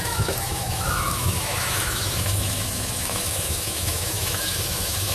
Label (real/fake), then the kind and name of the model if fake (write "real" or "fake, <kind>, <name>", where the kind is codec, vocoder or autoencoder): fake, autoencoder, DAC-VAE